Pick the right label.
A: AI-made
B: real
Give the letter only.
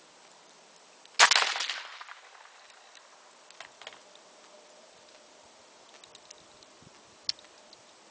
B